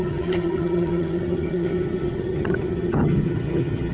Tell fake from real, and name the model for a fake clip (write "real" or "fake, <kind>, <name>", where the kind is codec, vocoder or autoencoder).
fake, vocoder, HiFi-GAN